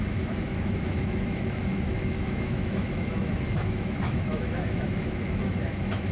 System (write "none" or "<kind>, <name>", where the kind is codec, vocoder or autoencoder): autoencoder, DAC-VAE